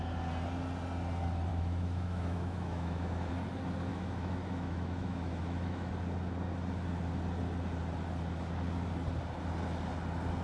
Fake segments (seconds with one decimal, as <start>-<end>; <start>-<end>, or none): 1.5-3.3; 3.9-5.9

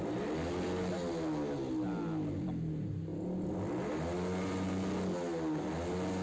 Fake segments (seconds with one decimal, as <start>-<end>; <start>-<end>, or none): none

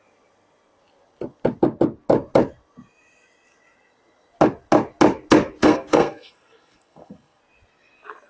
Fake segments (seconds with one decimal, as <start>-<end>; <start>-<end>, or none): 5.6-7.4

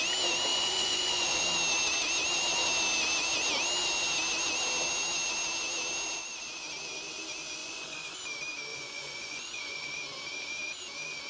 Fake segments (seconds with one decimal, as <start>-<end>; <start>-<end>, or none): 0.5-1.4; 7.6-8.2; 8.7-9.9

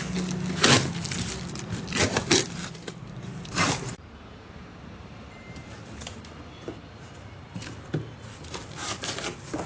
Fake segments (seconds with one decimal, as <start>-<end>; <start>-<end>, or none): 2.6-6.0

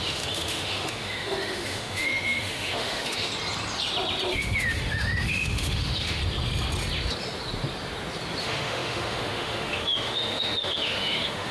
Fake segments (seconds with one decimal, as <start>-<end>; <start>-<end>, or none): 0.0-3.3; 4.3-6.2; 8.4-11.5